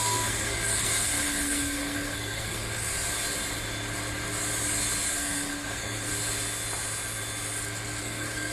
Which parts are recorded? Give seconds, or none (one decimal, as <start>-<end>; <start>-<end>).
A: 2.9-5.1; 6.1-8.0